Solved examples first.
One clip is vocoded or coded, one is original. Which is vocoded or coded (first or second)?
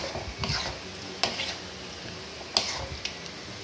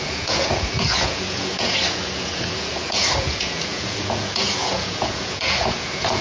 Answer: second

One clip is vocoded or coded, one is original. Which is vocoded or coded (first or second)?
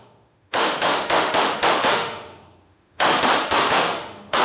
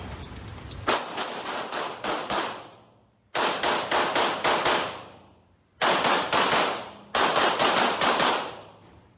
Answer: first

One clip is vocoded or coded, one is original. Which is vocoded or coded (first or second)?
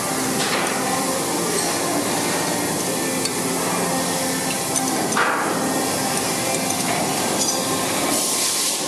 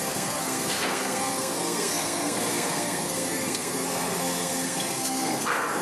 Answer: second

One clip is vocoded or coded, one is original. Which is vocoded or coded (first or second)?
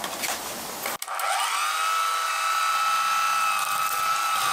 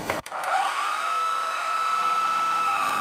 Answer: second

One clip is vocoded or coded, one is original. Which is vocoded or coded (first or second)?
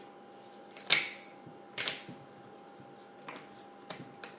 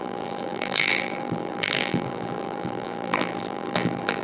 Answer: second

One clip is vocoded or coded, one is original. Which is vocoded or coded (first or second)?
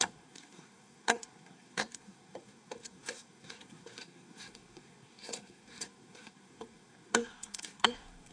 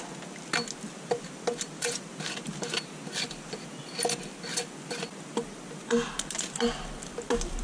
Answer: first